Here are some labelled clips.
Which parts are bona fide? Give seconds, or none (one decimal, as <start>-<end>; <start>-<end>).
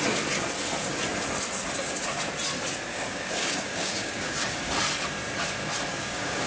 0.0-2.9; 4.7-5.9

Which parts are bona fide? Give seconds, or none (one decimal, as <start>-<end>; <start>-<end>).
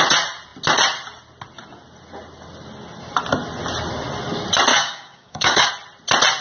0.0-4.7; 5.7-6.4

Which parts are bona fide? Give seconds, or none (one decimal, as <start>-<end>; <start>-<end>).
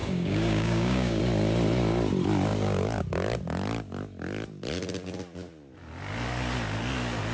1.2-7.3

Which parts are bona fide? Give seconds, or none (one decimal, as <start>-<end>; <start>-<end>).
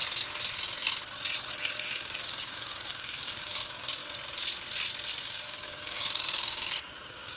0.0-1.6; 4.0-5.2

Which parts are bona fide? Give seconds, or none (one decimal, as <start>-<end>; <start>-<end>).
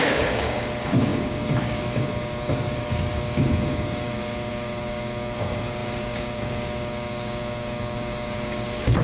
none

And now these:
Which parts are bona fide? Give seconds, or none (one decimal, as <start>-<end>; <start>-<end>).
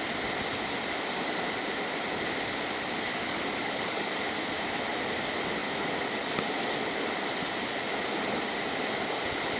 0.0-3.1; 4.1-9.6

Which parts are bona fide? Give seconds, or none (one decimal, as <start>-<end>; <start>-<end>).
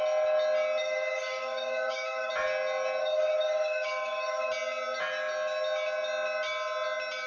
0.0-0.8; 2.3-3.0; 4.5-7.3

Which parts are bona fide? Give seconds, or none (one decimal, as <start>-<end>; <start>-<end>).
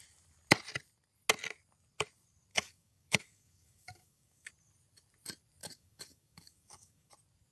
0.0-2.5; 4.5-5.6; 7.1-7.5